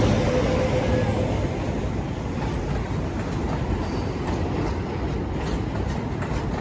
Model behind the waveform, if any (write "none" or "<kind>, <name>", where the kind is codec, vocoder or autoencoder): none